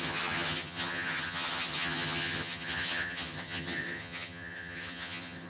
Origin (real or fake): fake